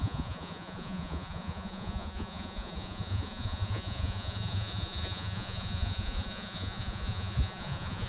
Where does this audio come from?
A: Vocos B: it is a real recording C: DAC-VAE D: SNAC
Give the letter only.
A